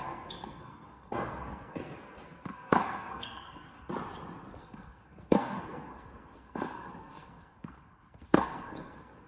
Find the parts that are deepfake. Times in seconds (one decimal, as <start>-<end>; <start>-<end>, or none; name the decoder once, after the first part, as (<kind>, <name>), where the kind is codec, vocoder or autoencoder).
0.0-3.9 (codec, SNAC); 4.6-9.3